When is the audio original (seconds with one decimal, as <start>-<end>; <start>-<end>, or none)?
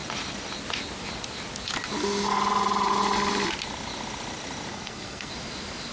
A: 0.0-4.7; 5.3-5.9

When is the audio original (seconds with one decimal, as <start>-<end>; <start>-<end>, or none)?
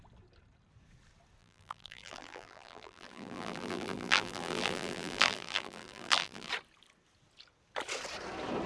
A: 0.0-1.4; 6.5-8.7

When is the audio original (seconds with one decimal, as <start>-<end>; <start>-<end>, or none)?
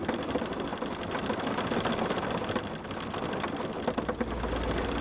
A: 0.0-5.0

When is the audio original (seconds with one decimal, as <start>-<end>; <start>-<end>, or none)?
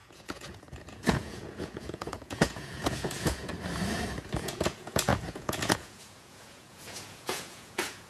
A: 3.5-4.4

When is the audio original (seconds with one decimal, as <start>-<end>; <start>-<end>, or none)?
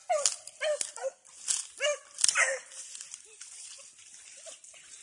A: 0.0-5.0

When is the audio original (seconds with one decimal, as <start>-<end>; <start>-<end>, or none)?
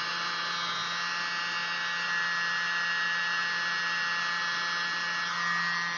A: 0.0-6.0